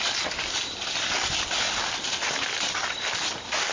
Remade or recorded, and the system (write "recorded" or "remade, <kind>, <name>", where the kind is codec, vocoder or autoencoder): recorded